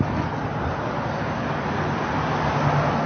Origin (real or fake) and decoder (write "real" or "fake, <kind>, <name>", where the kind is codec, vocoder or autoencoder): real